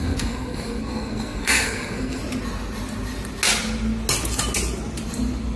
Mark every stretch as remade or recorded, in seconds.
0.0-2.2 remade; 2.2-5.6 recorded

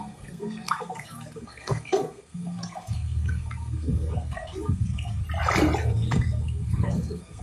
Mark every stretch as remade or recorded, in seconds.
0.0-5.2 remade; 5.2-5.8 recorded; 5.8-7.4 remade

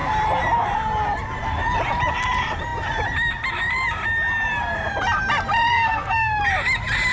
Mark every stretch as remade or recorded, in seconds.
0.0-5.7 recorded; 5.7-6.4 remade; 6.4-7.1 recorded

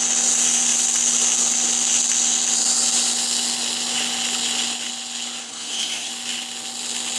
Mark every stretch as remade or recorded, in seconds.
0.0-5.4 recorded; 5.4-6.1 remade; 6.1-7.2 recorded

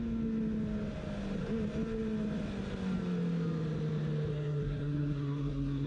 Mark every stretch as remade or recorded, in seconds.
0.0-4.3 recorded; 4.3-5.9 remade